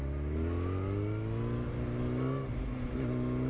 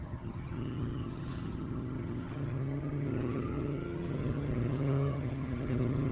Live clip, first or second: first